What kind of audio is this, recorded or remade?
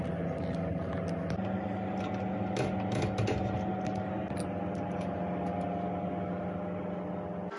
recorded